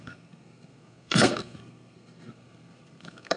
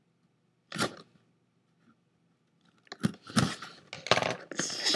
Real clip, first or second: second